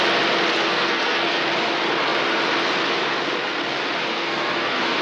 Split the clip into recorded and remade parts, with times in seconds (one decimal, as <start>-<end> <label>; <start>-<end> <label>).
0.0-0.7 recorded; 0.7-1.4 remade; 1.4-4.1 recorded; 4.1-5.0 remade